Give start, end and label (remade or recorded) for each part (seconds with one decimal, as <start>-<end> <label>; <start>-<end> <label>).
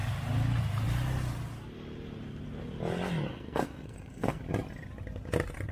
0.0-3.3 recorded; 3.3-4.4 remade; 4.4-5.7 recorded